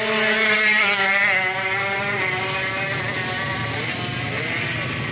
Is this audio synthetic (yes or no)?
yes